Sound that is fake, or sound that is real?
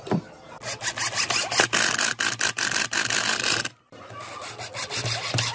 real